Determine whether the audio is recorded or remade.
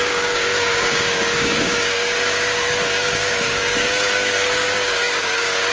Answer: remade